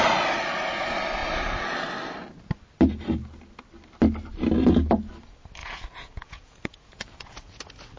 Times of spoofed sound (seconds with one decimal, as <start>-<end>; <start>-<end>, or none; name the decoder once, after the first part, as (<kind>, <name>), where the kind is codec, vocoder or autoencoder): 5.6-7.6 (vocoder, Vocos)